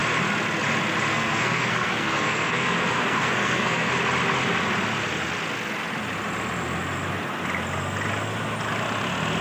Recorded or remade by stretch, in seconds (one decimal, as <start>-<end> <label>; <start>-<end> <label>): 0.0-1.1 recorded; 1.1-3.9 remade; 3.9-9.4 recorded